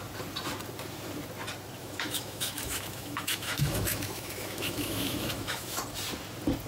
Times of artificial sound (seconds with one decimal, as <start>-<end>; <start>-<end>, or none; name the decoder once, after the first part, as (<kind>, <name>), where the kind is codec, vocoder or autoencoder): 1.8-5.8 (autoencoder, DAC-VAE)